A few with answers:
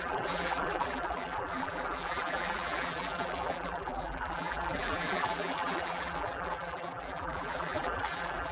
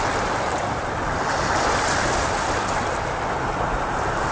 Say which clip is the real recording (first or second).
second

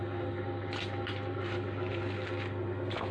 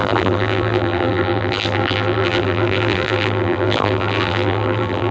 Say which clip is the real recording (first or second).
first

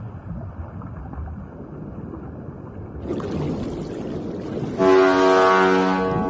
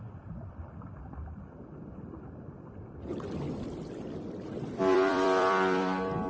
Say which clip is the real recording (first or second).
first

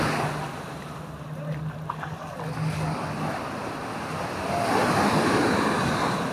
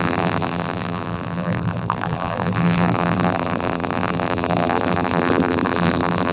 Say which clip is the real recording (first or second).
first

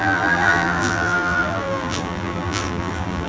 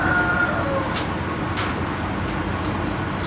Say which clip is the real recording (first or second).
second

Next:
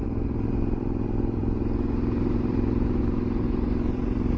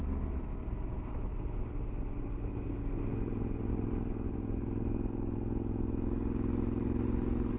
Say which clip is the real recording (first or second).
second